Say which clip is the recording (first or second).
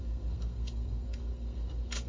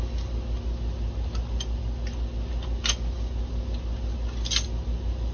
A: second